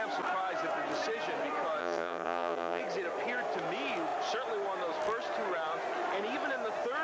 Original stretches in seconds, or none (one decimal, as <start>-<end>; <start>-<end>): 0.0-1.8; 2.8-7.0